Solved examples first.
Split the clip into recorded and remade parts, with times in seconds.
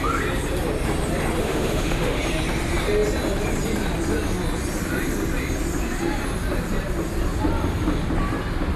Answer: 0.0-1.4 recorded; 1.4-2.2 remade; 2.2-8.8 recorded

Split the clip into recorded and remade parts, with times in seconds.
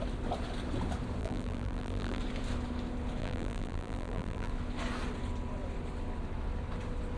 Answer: 0.0-1.2 recorded; 1.2-2.2 remade; 2.2-3.2 recorded; 3.2-4.5 remade; 4.5-7.2 recorded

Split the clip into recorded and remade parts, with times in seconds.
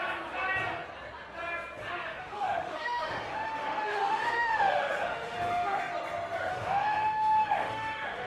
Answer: 0.0-1.8 recorded; 1.8-5.8 remade; 5.8-6.5 recorded; 6.5-8.3 remade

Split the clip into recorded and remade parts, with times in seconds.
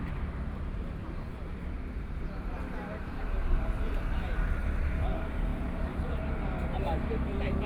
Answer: 0.0-1.3 remade; 1.3-2.0 recorded; 2.0-7.7 remade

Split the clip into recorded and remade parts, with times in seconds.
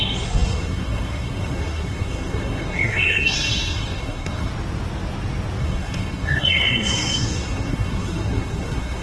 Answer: 0.0-4.5 remade; 4.5-5.6 recorded; 5.6-9.0 remade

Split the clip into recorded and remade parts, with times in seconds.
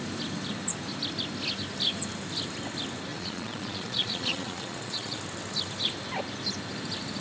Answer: 0.0-3.1 recorded; 3.1-5.2 remade; 5.2-7.2 recorded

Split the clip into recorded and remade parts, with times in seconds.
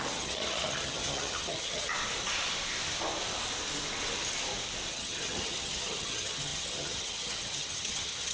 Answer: 0.0-1.9 remade; 1.9-4.9 recorded; 4.9-8.3 remade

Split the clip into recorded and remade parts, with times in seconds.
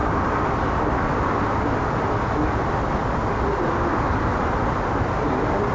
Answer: 0.0-5.7 recorded